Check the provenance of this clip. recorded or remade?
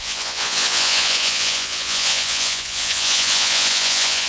remade